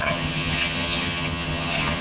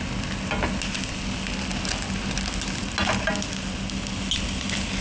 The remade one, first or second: first